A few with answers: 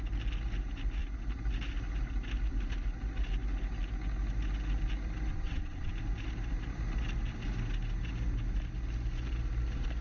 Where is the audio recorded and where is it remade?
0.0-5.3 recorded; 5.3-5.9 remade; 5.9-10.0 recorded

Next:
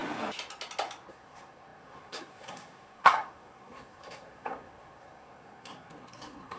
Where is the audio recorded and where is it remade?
0.0-1.1 recorded; 1.1-6.6 remade

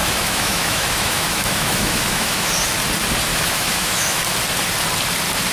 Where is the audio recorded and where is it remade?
0.0-2.5 remade; 2.5-3.3 recorded; 3.3-4.2 remade; 4.2-5.5 recorded

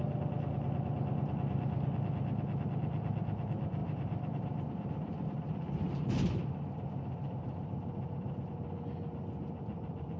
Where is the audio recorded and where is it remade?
0.0-3.8 recorded; 3.8-8.5 remade; 8.5-10.2 recorded

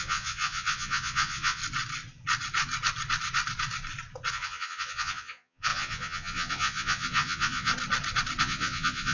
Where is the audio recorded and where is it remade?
0.0-1.6 remade; 1.6-4.3 recorded; 4.3-7.7 remade; 7.7-8.4 recorded; 8.4-9.1 remade

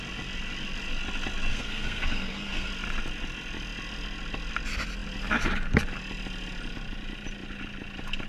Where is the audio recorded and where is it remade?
0.0-1.5 recorded; 1.5-2.7 remade; 2.7-8.3 recorded

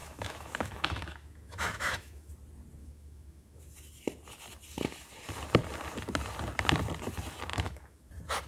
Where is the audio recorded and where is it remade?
0.0-2.3 remade; 2.3-2.8 recorded; 2.8-3.6 remade; 3.6-7.5 recorded; 7.5-8.1 remade; 8.1-8.5 recorded

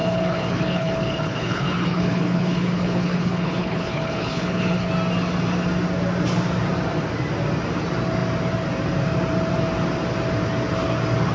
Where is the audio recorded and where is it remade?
0.0-4.9 remade; 4.9-11.3 recorded